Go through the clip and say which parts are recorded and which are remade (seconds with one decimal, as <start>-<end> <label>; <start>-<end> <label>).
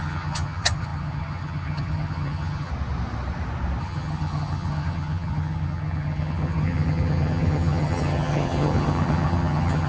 0.0-2.7 remade; 2.7-3.8 recorded; 3.8-9.9 remade